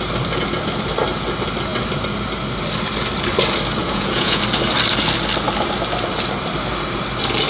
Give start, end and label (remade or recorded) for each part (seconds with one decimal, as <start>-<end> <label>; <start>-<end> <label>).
0.0-3.8 recorded; 3.8-4.4 remade; 4.4-7.5 recorded